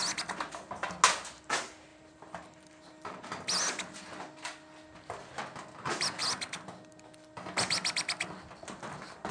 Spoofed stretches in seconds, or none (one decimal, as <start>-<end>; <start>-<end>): 1.9-3.3